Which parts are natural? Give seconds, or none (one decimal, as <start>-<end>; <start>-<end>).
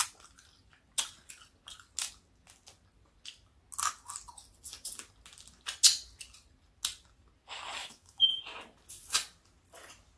0.0-7.8; 8.4-10.2